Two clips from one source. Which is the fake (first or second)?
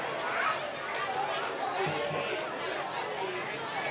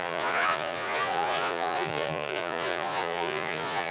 second